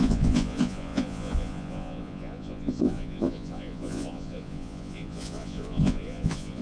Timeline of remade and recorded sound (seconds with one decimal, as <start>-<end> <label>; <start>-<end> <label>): 0.0-6.6 remade